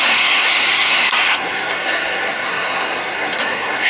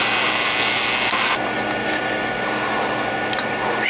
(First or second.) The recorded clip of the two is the second